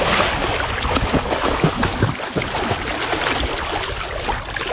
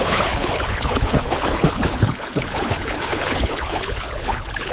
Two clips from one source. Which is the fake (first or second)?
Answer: second